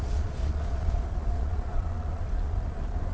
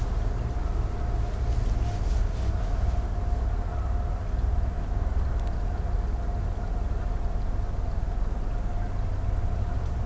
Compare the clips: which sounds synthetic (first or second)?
first